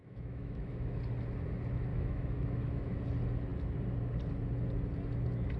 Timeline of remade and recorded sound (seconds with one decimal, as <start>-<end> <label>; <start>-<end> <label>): 0.0-1.0 remade; 1.0-1.9 recorded; 1.9-3.0 remade; 3.0-5.6 recorded